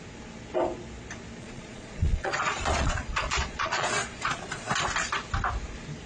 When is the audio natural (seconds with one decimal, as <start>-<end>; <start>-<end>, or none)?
0.0-1.4; 4.7-6.1